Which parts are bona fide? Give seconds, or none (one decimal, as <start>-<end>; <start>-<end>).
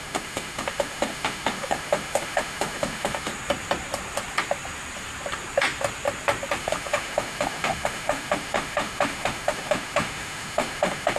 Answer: 3.3-6.6